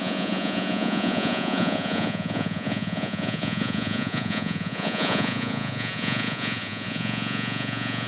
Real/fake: fake